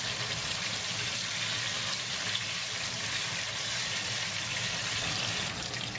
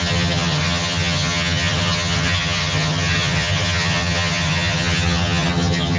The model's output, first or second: second